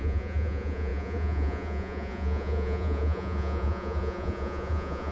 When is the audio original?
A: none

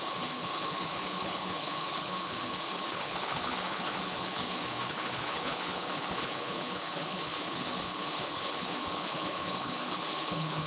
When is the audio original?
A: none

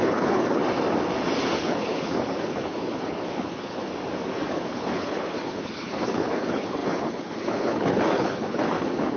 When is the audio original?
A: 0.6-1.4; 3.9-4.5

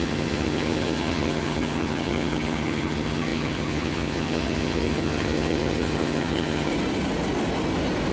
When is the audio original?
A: 6.7-8.1

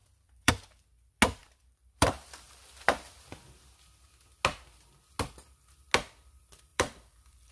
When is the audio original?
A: 0.5-1.4; 2.7-6.7

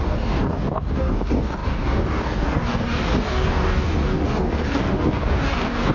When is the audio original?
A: none